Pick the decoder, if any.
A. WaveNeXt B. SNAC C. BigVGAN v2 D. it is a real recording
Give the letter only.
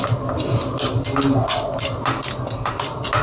D